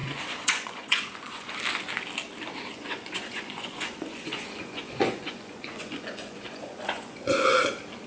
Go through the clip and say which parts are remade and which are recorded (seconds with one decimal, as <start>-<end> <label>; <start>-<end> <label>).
0.0-1.6 remade; 1.6-2.7 recorded; 2.7-7.6 remade; 7.6-8.1 recorded